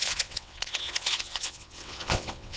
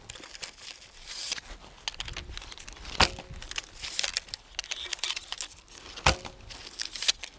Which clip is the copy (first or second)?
first